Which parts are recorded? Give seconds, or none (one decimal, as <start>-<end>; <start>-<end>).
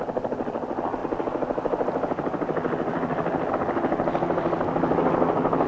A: 0.0-1.0; 3.5-5.7